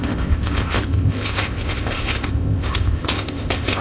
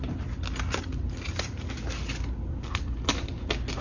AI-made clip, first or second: first